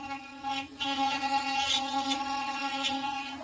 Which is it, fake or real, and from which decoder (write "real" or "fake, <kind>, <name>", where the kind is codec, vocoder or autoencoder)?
fake, vocoder, Vocos